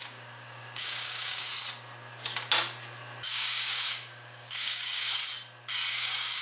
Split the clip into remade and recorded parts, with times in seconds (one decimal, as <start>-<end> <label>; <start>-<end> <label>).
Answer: 0.0-1.5 remade; 1.5-3.3 recorded; 3.3-5.2 remade; 5.2-5.9 recorded; 5.9-6.4 remade